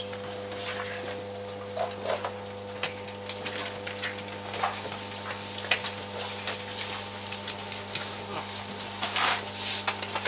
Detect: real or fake real